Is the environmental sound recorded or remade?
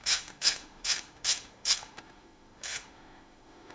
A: remade